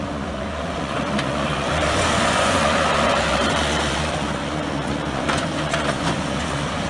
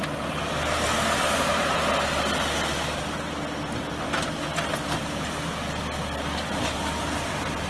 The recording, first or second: second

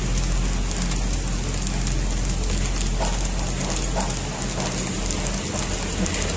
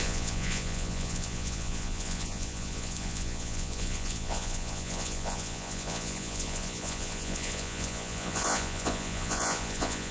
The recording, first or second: first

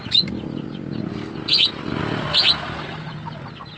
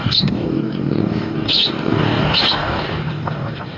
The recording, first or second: first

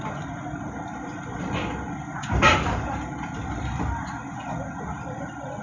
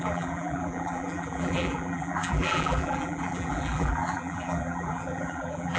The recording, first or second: first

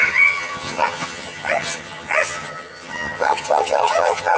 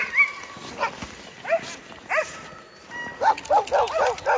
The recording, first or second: second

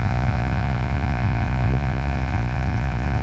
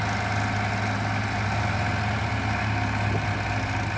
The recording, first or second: second